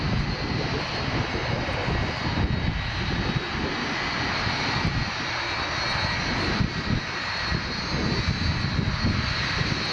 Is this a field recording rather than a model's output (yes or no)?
yes